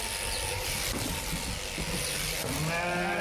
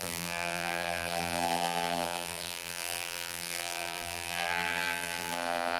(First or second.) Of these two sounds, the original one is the first